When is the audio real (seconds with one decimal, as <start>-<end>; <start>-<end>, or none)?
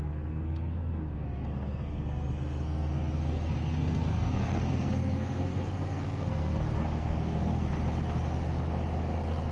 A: 7.7-9.5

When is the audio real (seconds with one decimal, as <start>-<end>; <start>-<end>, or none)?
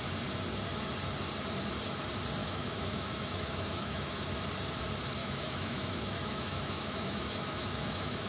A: 0.0-2.4; 4.3-5.2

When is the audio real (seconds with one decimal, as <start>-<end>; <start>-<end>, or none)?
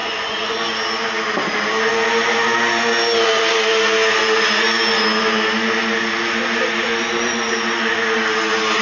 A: 0.6-8.8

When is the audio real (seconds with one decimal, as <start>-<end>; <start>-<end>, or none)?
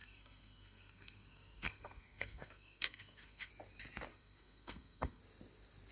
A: 3.5-4.1; 5.2-5.9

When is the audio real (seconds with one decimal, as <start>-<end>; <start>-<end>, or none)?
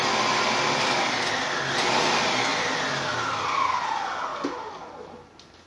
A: 0.0-5.7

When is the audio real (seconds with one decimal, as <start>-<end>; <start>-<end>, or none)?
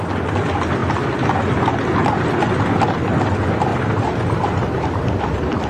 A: 0.0-3.7; 5.1-5.7